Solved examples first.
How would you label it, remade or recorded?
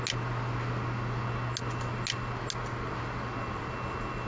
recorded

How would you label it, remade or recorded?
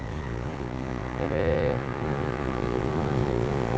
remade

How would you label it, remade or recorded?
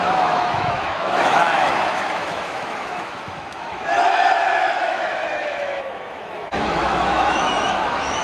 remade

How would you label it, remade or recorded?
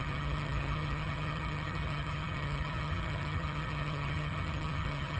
remade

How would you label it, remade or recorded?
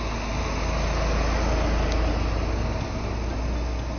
recorded